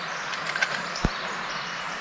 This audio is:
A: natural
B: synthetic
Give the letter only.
B